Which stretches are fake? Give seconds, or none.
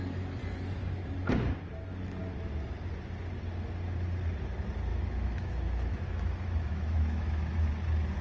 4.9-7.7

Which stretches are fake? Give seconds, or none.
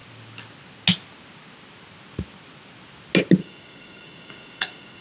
3.4-5.0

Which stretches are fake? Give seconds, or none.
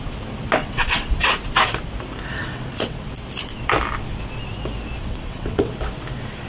0.6-1.3; 2.4-3.0; 5.0-5.7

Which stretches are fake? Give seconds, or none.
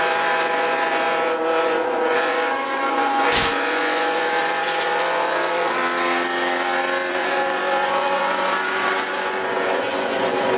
0.0-5.8; 7.1-10.6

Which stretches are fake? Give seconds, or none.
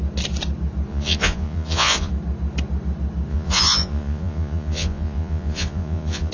0.9-2.1; 3.3-6.3